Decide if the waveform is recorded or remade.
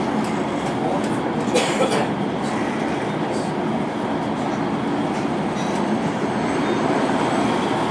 recorded